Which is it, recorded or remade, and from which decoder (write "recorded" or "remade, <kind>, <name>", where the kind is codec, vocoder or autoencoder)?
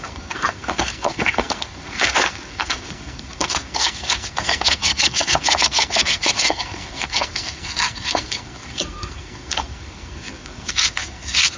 remade, codec, SNAC